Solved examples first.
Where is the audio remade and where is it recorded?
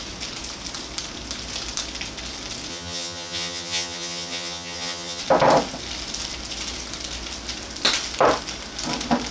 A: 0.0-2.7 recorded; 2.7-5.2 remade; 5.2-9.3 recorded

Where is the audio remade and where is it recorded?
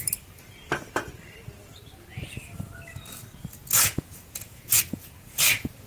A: 0.0-3.6 recorded; 3.6-5.9 remade